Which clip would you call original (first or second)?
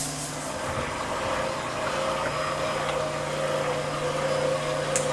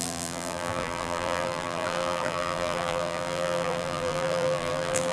first